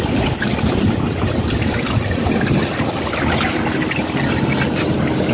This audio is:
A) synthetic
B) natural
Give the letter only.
B